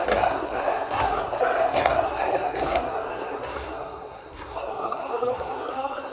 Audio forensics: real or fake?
fake